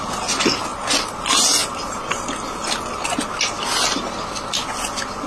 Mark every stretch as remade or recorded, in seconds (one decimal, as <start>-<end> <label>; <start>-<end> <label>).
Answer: 0.0-5.3 recorded